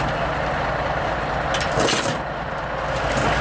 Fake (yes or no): no